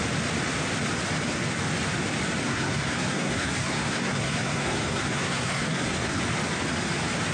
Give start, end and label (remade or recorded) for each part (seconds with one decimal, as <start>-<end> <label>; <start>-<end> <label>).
0.0-2.4 recorded; 2.4-6.2 remade; 6.2-7.3 recorded